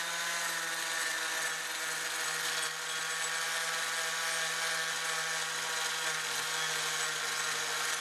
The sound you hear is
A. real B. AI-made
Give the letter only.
A